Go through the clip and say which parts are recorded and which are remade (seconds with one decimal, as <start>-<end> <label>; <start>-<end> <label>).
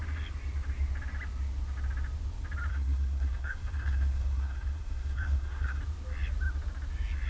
0.0-2.7 recorded; 2.7-5.8 remade; 5.8-7.3 recorded